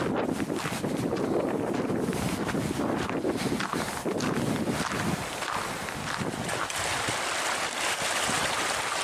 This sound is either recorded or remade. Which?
recorded